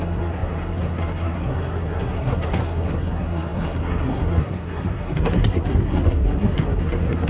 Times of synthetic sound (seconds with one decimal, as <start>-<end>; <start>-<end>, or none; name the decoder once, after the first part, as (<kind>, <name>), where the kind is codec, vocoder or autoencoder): 0.0-7.3 (codec, SNAC)